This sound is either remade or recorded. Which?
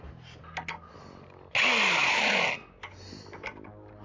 recorded